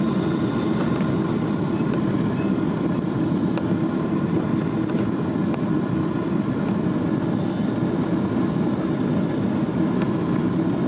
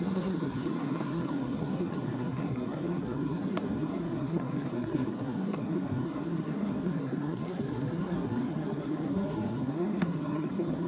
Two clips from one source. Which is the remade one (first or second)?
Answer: second